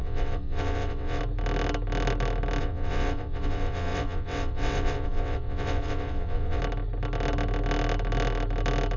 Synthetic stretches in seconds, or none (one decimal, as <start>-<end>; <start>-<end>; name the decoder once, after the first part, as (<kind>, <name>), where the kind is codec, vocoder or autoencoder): 0.0-1.2 (vocoder, WaveNeXt); 2.6-6.6